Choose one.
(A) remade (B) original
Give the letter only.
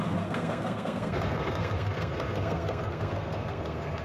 A